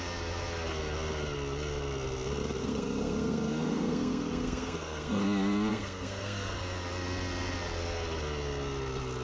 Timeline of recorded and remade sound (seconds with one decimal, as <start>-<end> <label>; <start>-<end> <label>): 0.0-2.6 recorded; 2.6-5.2 remade; 5.2-5.7 recorded; 5.7-6.6 remade; 6.6-9.2 recorded